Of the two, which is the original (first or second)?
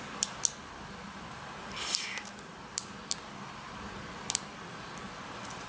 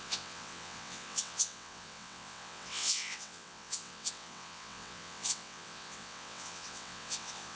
first